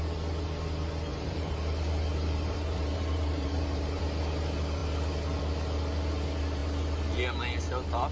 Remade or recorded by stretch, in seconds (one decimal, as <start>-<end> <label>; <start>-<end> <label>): 0.0-1.1 recorded; 1.1-4.0 remade; 4.0-8.1 recorded